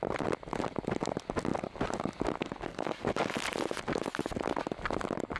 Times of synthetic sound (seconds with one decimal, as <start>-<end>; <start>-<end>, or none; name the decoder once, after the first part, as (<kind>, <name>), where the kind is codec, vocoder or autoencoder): 2.7-3.3 (codec, DAC)